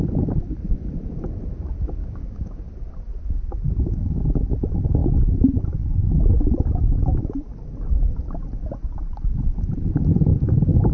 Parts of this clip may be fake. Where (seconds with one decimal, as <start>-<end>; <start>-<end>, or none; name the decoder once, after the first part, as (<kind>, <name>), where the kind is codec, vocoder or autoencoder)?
2.0-2.6 (codec, DAC); 3.8-4.4; 10.3-10.9

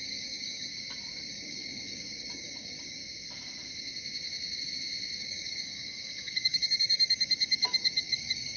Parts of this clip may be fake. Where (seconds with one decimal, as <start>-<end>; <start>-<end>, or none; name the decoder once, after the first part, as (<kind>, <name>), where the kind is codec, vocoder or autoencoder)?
0.0-0.7 (codec, DAC); 1.3-3.0; 5.2-8.6